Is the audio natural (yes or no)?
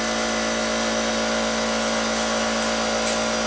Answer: yes